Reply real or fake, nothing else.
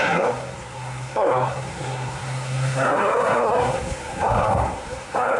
fake